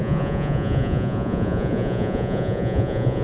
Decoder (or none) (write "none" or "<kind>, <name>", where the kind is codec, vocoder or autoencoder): vocoder, Vocos